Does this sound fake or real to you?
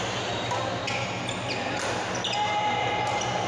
real